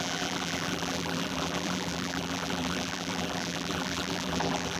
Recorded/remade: remade